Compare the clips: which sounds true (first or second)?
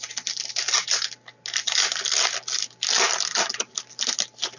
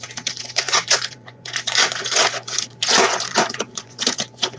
first